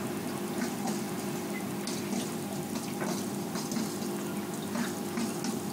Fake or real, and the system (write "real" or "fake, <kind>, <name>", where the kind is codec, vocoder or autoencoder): real